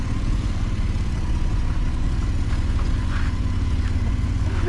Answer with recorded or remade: remade